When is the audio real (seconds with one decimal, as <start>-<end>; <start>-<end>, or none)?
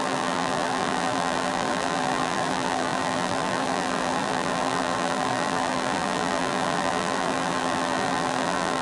none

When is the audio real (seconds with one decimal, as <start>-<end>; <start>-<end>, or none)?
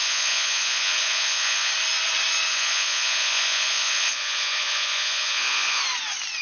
1.7-2.5; 5.8-6.4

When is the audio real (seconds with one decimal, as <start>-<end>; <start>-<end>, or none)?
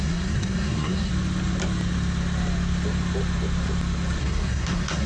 1.1-4.2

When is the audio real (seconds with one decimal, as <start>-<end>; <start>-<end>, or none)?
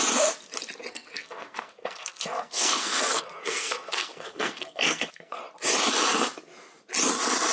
0.0-0.9; 5.4-7.5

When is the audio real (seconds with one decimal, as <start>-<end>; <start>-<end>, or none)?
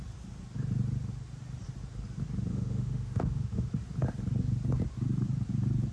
0.0-2.5; 3.7-5.9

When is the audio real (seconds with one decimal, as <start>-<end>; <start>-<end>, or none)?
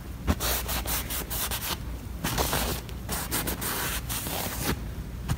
0.0-5.4